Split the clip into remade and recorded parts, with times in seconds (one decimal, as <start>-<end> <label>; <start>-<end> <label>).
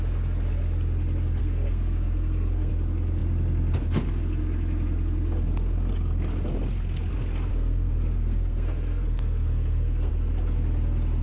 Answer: 0.0-1.4 recorded; 1.4-2.7 remade; 2.7-7.5 recorded; 7.5-10.1 remade; 10.1-11.2 recorded